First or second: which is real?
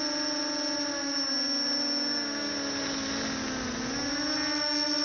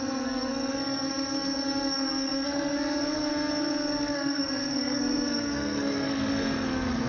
first